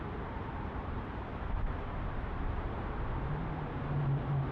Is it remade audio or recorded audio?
remade